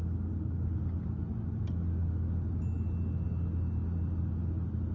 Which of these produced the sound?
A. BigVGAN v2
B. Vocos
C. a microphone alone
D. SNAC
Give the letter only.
C